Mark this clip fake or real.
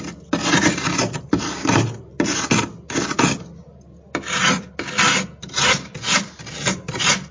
real